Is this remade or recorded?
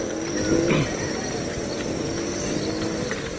recorded